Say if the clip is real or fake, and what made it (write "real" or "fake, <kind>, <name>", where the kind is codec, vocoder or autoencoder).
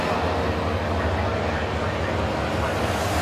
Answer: real